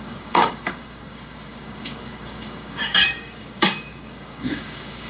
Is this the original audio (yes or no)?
no